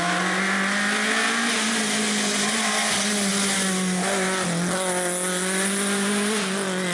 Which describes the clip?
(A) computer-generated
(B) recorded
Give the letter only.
B